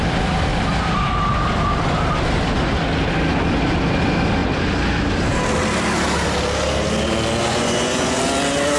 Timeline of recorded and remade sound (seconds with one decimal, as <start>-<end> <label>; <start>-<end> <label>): 0.0-7.5 recorded; 7.5-8.2 remade; 8.2-8.8 recorded